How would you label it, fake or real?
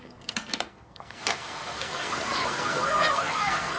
fake